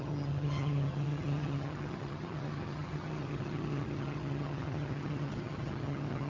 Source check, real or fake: fake